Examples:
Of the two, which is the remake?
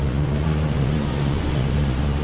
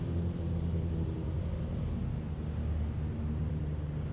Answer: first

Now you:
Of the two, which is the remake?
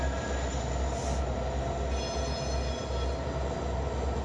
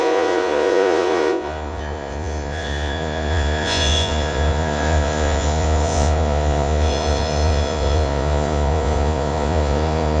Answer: second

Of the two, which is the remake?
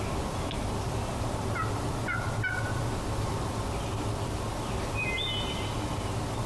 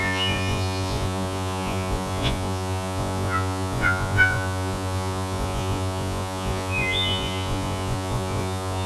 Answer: second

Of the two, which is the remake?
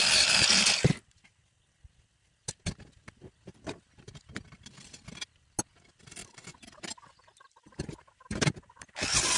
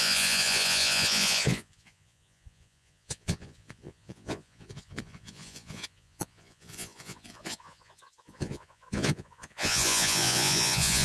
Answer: second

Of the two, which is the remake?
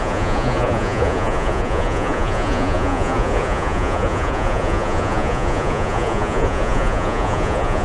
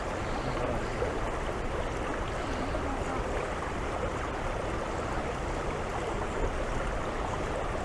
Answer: first